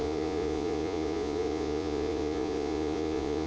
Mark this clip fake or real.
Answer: fake